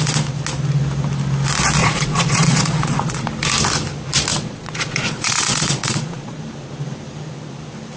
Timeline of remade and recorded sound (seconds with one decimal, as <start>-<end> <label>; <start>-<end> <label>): 0.0-1.8 recorded; 1.8-3.3 remade; 3.3-4.3 recorded; 4.3-6.4 remade; 6.4-8.0 recorded